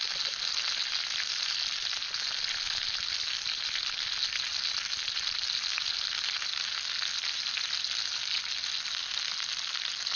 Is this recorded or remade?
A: recorded